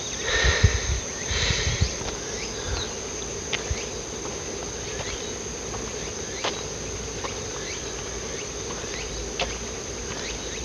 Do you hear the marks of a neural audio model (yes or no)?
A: no